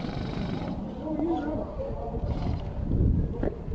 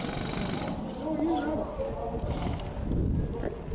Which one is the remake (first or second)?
first